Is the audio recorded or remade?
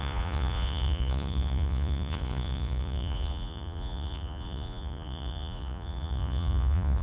remade